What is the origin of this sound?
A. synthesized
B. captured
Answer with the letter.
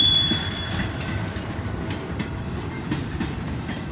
A